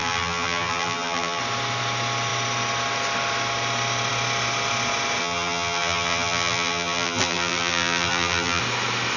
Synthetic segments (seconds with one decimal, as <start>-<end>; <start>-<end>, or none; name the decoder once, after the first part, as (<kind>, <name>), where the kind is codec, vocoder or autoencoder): 0.0-1.4 (vocoder, BigVGAN v2); 5.2-8.6